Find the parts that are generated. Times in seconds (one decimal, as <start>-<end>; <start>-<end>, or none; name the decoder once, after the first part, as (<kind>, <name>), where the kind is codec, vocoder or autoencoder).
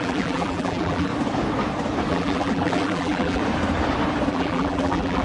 0.0-1.1 (vocoder, BigVGAN v2); 2.1-3.4; 4.3-5.2